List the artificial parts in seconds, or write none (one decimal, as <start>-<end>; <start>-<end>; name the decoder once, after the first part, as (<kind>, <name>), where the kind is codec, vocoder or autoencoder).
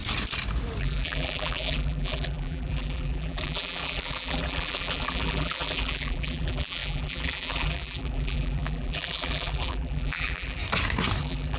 0.8-10.6 (vocoder, BigVGAN v2); 11.2-11.6